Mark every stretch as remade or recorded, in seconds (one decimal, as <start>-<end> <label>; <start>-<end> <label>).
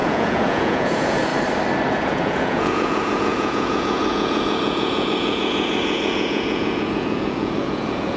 0.0-1.3 remade; 1.3-1.9 recorded; 1.9-8.2 remade